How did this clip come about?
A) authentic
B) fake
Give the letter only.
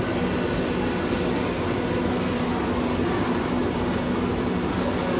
A